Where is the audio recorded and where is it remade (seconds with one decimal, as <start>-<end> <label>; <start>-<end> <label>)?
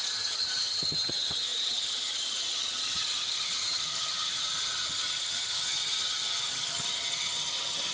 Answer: 0.0-7.9 remade